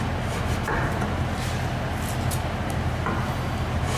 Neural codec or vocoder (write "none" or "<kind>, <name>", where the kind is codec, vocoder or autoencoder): none